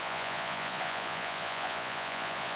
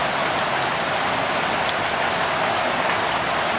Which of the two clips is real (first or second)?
second